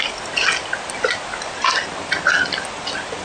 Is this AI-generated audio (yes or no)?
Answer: no